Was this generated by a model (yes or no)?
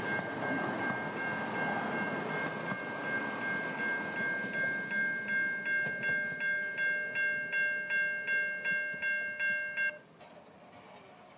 no